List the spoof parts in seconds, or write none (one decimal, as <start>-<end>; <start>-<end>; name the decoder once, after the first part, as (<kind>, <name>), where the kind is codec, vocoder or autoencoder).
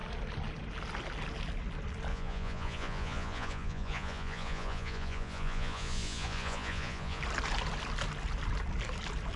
2.1-7.2 (vocoder, Vocos)